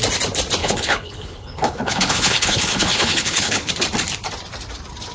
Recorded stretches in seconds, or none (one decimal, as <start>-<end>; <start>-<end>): 0.0-0.6; 3.7-5.1